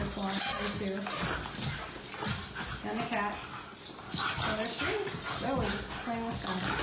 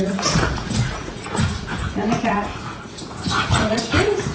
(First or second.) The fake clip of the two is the second